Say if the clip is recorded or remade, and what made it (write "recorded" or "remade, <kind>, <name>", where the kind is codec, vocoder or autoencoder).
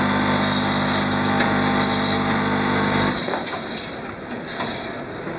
recorded